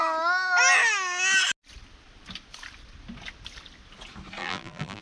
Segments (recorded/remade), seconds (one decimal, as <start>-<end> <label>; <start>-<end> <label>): 0.0-4.4 recorded; 4.4-5.0 remade